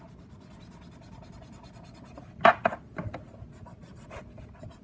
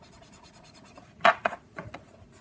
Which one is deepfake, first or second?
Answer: second